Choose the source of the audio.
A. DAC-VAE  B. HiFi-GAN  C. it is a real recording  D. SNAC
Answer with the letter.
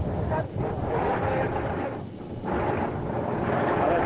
C